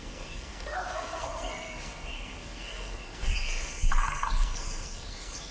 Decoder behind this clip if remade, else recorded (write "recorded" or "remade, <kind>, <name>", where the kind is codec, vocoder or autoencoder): remade, codec, SNAC